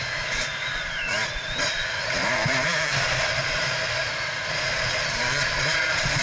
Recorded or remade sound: remade